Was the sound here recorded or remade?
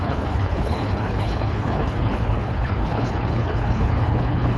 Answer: remade